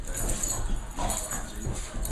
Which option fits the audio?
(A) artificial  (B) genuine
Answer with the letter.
B